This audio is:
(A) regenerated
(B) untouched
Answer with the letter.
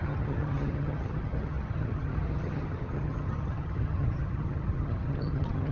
A